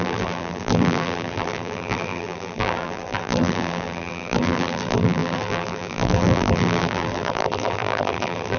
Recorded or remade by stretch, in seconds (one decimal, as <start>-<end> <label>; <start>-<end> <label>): 0.0-8.6 remade